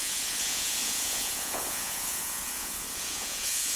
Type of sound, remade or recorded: remade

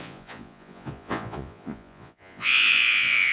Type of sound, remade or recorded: remade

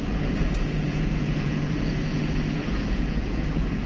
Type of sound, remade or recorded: remade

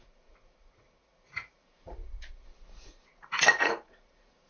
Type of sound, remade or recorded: remade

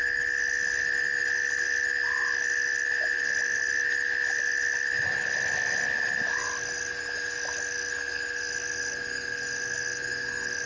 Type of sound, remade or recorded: recorded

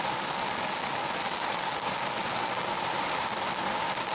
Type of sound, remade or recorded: recorded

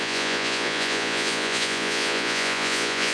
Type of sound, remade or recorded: remade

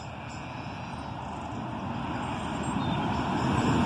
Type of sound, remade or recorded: recorded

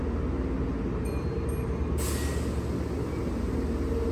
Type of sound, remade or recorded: recorded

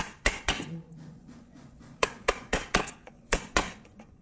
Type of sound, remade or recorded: remade